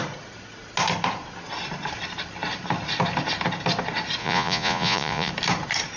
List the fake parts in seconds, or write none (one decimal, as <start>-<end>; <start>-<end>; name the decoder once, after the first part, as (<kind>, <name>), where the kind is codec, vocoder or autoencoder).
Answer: 4.2-5.3 (vocoder, Vocos)